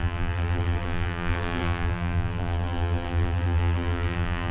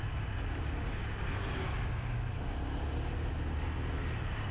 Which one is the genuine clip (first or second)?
second